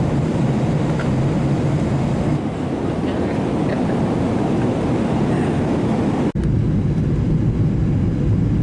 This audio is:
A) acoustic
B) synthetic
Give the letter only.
A